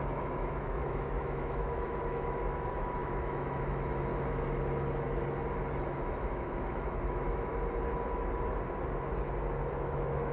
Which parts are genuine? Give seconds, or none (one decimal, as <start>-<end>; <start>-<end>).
4.1-5.7; 7.5-9.7